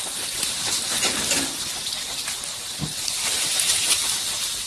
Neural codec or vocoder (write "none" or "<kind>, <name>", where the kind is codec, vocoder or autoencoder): none